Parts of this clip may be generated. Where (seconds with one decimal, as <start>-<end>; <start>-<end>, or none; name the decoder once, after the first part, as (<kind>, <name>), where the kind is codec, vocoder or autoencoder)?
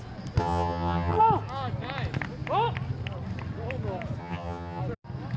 0.4-1.2 (vocoder, HiFi-GAN); 4.2-4.8